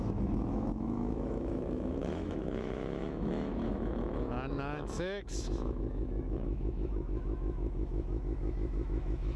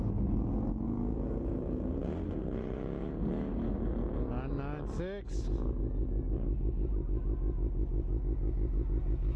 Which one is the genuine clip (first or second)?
second